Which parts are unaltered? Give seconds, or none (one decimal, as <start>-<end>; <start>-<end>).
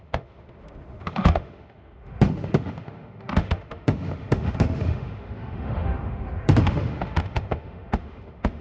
none